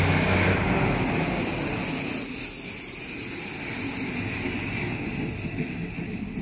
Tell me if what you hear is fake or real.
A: real